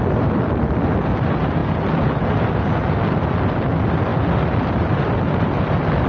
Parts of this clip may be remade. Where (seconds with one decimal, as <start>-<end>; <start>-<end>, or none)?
0.0-1.6; 3.3-6.1